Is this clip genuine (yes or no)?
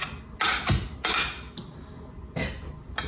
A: yes